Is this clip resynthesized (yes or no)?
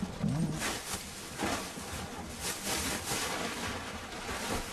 no